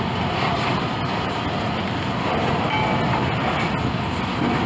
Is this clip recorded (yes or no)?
yes